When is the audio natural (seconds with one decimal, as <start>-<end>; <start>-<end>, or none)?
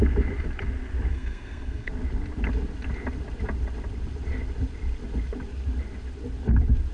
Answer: 0.0-1.1; 1.9-6.9